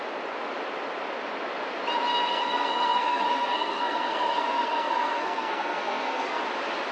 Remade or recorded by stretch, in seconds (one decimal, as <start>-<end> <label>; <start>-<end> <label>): 0.0-2.3 recorded; 2.3-6.4 remade; 6.4-6.9 recorded